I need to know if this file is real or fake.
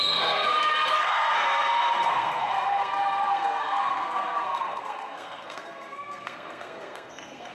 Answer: fake